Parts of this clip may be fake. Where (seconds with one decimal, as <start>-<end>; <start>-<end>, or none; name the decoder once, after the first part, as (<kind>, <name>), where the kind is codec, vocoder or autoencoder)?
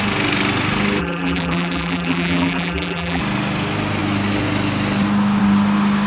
1.0-3.2 (vocoder, BigVGAN v2)